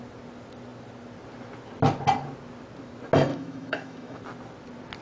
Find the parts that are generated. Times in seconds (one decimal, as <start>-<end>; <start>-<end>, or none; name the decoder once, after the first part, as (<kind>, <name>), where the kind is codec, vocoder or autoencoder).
3.3-4.2 (autoencoder, DAC-VAE)